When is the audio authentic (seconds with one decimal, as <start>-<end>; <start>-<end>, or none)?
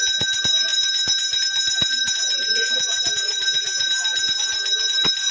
0.0-5.3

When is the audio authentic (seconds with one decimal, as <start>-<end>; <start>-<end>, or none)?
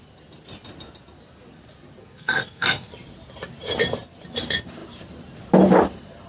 0.0-2.0; 2.9-6.3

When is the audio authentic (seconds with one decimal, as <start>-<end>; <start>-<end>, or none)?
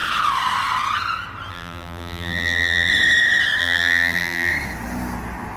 0.0-1.5; 2.9-3.6; 4.5-5.6